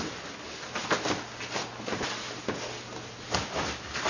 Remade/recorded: recorded